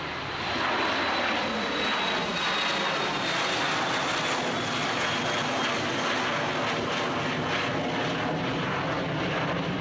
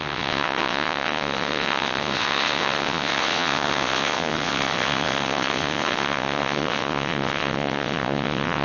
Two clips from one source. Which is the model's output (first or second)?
second